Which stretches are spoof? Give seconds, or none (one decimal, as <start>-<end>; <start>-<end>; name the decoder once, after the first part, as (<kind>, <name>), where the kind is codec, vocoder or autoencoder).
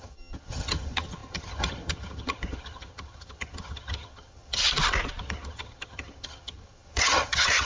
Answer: 0.0-4.6 (vocoder, HiFi-GAN); 5.2-7.7